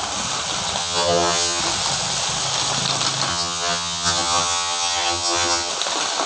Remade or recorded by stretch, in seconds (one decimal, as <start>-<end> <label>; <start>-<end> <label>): 0.0-0.8 recorded; 0.8-1.6 remade; 1.6-3.3 recorded; 3.3-5.7 remade; 5.7-6.3 recorded